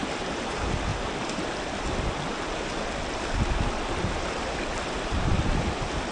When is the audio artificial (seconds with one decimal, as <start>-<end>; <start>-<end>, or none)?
0.0-6.1